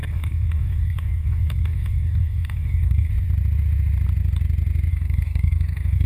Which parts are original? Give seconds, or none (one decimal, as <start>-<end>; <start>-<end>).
3.1-4.9